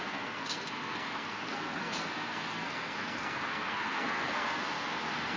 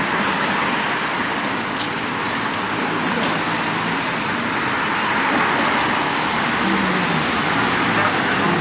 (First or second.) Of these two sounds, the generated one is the first